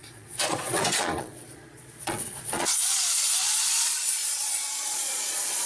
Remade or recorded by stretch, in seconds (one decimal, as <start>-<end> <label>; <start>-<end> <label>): 0.0-5.7 remade